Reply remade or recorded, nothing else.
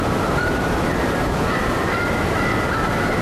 recorded